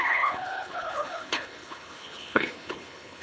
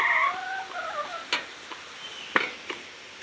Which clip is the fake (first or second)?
first